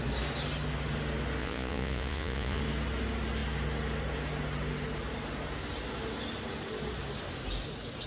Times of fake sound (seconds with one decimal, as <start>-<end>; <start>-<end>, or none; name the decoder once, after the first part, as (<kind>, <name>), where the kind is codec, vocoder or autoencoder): 1.4-2.6 (vocoder, Vocos)